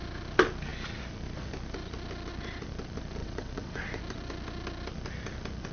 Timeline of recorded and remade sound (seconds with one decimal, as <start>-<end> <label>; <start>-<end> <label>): 0.0-3.2 recorded; 3.2-4.0 remade; 4.0-5.7 recorded